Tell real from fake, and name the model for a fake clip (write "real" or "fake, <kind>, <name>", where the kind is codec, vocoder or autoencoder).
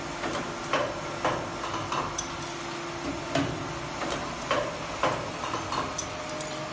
real